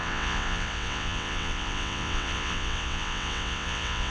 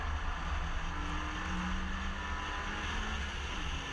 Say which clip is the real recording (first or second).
second